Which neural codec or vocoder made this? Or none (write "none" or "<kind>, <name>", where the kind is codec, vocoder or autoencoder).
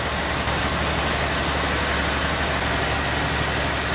none